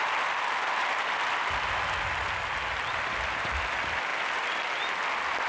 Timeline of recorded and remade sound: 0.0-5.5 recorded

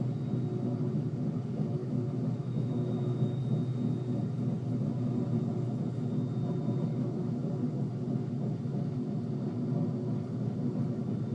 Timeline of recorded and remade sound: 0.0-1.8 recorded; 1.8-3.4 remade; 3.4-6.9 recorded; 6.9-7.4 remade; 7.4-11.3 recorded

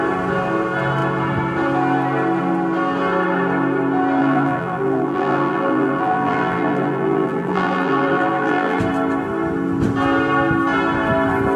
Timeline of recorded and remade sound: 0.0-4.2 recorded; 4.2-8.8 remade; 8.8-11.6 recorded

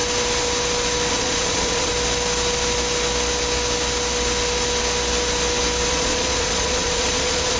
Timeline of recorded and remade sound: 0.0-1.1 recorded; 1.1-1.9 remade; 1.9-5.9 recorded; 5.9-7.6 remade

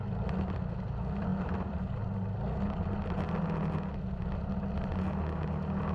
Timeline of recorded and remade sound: 0.0-1.3 recorded; 1.3-2.0 remade; 2.0-5.9 recorded